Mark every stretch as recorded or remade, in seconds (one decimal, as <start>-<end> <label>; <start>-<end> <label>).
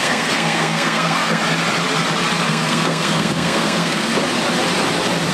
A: 0.0-1.4 remade; 1.4-2.5 recorded; 2.5-4.1 remade; 4.1-5.3 recorded